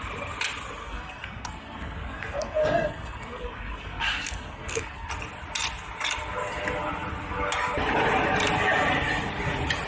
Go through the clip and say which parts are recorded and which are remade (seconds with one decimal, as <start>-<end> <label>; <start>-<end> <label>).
0.0-0.8 recorded; 0.8-5.1 remade; 5.1-9.9 recorded